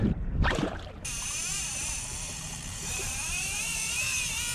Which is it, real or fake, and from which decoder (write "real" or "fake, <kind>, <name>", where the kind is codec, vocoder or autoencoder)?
fake, vocoder, BigVGAN v2